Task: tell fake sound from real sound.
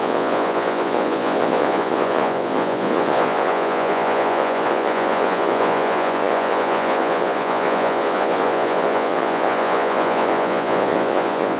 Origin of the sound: fake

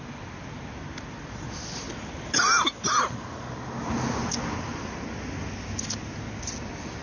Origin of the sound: real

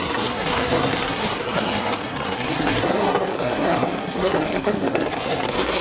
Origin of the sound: fake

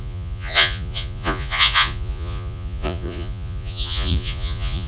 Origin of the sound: fake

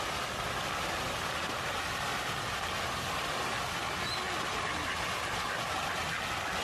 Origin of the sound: real